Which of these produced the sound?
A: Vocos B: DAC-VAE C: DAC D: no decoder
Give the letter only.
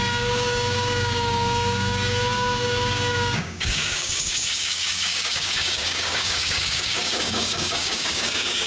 C